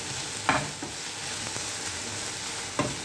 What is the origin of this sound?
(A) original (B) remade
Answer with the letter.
A